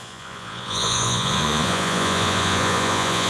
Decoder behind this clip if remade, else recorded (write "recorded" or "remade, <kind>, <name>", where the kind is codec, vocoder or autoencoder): remade, vocoder, Vocos